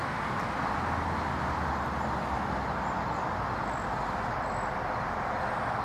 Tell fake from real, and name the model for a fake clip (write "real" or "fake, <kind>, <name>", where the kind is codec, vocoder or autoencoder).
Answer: real